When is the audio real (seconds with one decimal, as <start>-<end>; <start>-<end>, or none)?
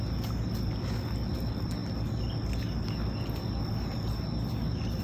0.0-5.0